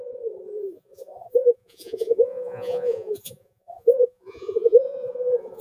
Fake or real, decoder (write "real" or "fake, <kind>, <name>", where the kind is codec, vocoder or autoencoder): fake, vocoder, Vocos